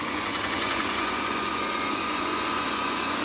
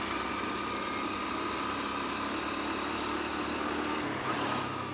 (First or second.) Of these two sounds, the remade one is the first